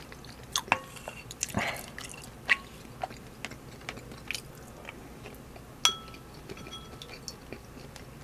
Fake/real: real